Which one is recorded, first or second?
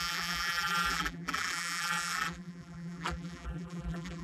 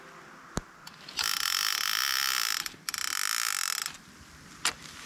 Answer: second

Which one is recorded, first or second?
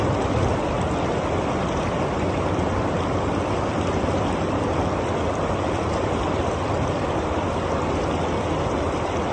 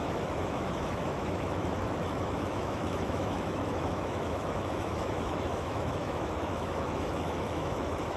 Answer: first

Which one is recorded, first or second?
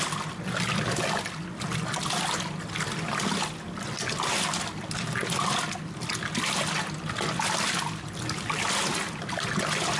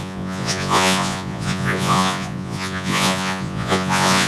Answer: first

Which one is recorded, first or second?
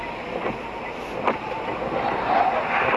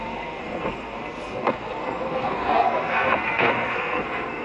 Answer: first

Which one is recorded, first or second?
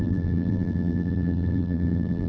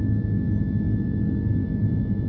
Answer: second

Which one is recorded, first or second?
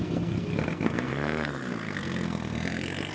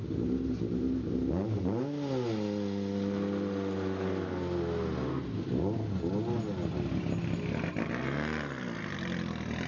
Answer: second